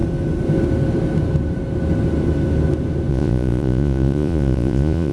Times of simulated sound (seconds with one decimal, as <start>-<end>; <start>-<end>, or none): 3.1-5.1